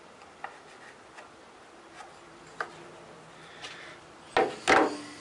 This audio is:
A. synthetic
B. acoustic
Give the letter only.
B